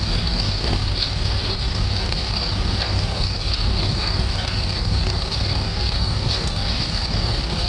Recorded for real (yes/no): no